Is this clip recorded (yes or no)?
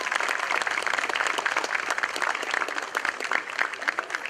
yes